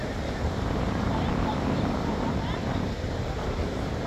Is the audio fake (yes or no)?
yes